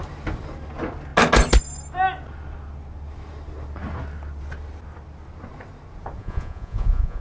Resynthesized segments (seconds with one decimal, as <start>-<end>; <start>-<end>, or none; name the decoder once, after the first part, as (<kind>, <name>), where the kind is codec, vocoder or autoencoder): 6.2-7.2 (vocoder, Vocos)